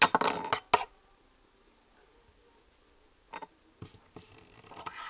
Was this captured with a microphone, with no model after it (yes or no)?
yes